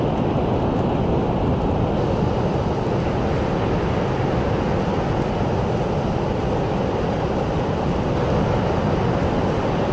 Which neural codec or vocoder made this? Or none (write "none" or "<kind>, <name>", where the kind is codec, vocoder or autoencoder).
none